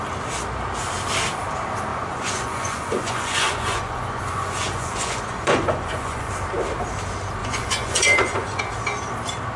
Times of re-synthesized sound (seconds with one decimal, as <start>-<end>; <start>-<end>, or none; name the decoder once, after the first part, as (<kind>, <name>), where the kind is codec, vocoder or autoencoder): 1.9-6.3 (vocoder, Vocos); 7.4-8.6